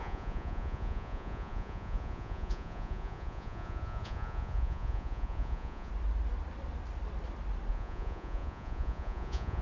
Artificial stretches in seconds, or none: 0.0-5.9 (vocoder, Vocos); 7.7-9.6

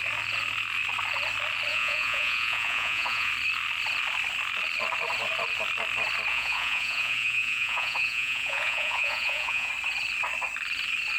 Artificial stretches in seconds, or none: 1.7-3.3 (vocoder, Vocos); 6.3-9.7

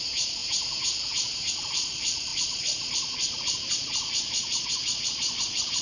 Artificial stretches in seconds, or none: 0.0-0.4 (vocoder, Vocos); 1.5-5.8

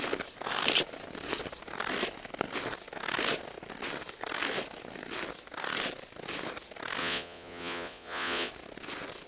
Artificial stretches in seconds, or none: 7.0-8.5 (vocoder, Vocos)

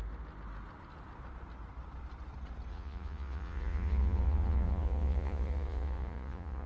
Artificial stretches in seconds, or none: 2.7-6.7 (vocoder, Vocos)

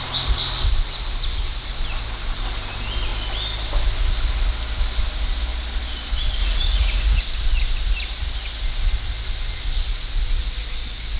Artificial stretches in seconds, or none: 6.4-7.2 (vocoder, Vocos)

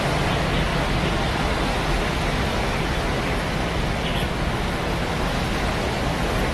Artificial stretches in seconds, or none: none